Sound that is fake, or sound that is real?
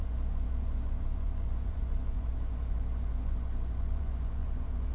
fake